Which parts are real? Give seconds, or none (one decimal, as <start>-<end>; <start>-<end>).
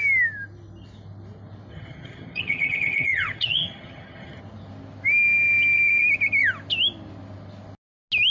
0.0-1.7; 4.4-8.3